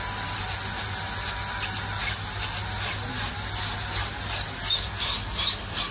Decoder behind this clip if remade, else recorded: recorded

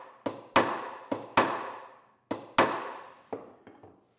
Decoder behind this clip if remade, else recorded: recorded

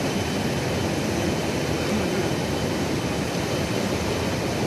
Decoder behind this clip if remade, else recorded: recorded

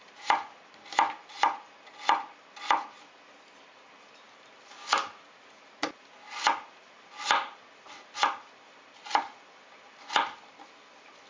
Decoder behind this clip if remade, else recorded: recorded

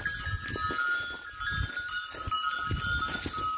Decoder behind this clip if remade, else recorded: recorded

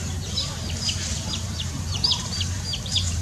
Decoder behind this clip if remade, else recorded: remade, vocoder, BigVGAN v2